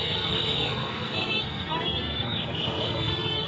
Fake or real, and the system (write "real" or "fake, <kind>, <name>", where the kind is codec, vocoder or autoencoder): fake, codec, SNAC